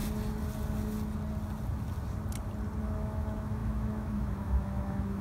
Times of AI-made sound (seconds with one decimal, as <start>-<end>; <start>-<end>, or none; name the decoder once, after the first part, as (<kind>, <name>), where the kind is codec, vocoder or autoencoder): 2.8-5.2 (autoencoder, DAC-VAE)